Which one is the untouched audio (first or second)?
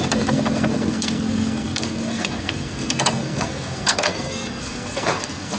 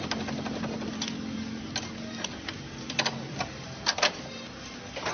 second